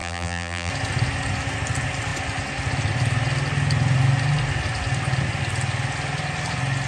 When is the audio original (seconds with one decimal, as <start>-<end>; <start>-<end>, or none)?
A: 0.7-6.9